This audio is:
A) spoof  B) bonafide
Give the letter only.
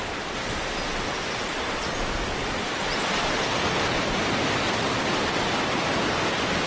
B